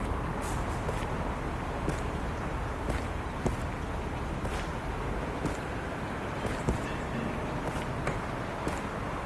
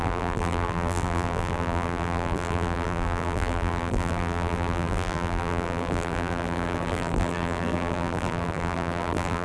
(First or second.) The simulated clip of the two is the second